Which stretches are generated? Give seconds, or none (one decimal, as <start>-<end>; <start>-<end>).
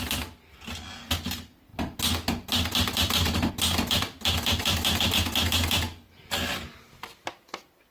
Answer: none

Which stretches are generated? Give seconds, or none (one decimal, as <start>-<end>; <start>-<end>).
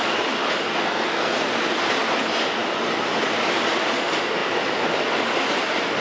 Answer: 0.7-1.4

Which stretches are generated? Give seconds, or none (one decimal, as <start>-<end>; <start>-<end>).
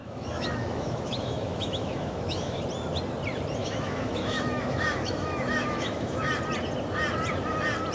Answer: 0.0-2.6; 3.6-6.3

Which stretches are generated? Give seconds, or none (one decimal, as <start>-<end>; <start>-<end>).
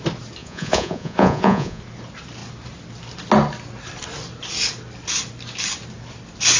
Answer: 0.4-1.8